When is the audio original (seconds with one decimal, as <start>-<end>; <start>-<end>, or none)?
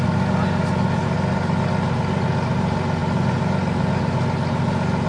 0.0-5.1